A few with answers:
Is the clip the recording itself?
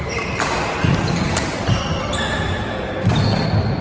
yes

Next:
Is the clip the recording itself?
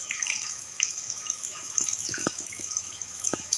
no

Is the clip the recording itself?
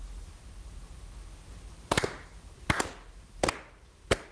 yes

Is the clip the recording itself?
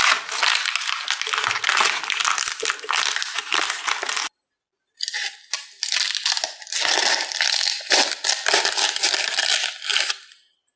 yes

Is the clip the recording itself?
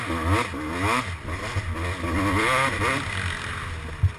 yes